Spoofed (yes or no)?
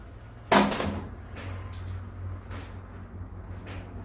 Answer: no